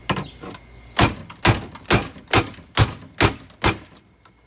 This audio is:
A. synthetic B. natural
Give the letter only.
B